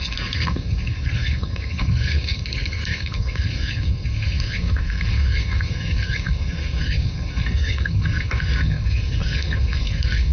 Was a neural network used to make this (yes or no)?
yes